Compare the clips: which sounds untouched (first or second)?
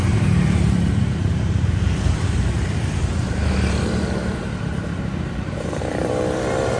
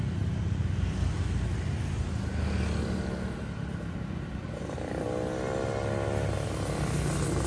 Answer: second